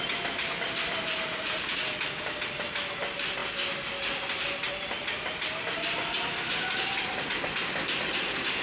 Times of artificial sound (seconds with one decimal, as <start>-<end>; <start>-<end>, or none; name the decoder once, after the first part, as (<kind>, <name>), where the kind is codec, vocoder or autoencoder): none